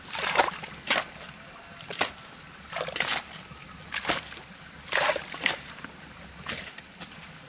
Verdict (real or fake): real